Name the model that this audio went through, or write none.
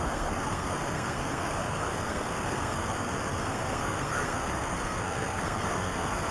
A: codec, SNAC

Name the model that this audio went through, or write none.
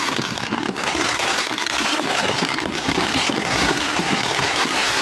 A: codec, SNAC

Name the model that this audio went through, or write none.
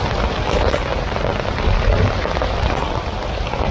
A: none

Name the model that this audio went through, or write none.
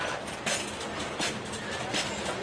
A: none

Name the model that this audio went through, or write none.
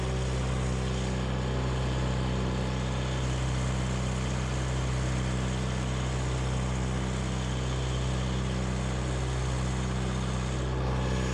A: none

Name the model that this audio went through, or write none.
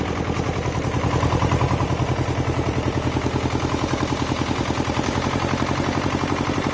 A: none